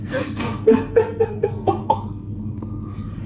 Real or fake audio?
fake